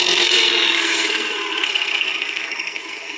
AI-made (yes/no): yes